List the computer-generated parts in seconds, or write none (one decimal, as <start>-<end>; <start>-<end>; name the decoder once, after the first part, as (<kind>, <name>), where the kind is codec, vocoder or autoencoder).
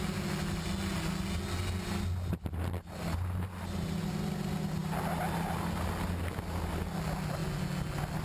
none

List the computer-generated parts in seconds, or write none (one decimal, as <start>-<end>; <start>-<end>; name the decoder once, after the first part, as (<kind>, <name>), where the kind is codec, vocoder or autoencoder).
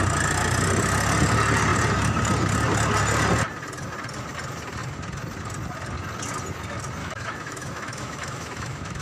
7.0-9.0 (autoencoder, DAC-VAE)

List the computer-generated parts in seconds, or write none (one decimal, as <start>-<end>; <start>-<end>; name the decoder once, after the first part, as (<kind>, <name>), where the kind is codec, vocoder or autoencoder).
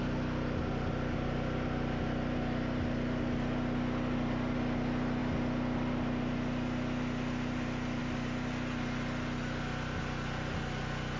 none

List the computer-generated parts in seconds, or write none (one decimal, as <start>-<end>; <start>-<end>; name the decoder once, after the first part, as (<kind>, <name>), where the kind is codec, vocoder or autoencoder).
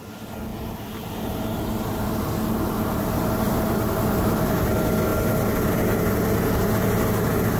none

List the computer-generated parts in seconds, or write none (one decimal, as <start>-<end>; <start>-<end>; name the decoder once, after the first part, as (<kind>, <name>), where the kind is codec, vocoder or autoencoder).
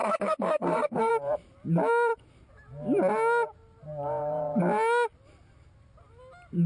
0.0-1.1 (codec, SNAC)